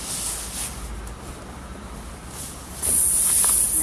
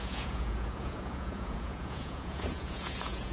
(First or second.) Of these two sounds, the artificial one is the second